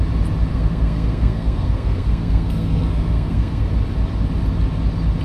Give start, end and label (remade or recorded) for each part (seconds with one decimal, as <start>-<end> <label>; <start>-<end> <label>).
0.0-0.5 recorded; 0.5-3.6 remade; 3.6-5.2 recorded